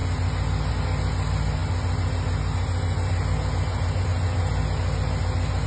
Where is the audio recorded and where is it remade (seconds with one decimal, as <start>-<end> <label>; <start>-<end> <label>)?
0.0-5.7 recorded